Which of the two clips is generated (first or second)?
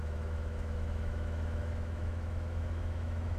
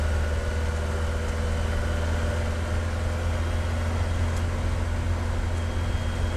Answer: first